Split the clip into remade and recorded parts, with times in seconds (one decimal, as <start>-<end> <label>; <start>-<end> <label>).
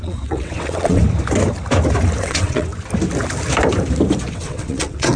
0.0-1.0 remade; 1.0-2.2 recorded; 2.2-2.7 remade; 2.7-4.3 recorded; 4.3-5.2 remade